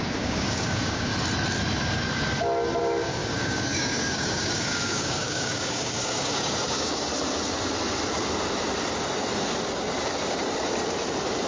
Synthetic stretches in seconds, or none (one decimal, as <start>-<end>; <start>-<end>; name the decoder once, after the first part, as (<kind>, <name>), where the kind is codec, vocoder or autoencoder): 0.0-1.1 (codec, DAC); 2.8-7.1